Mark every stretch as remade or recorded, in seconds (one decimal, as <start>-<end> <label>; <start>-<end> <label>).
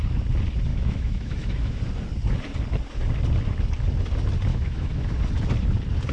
0.0-0.7 recorded; 0.7-1.8 remade; 1.8-4.5 recorded; 4.5-5.1 remade; 5.1-6.1 recorded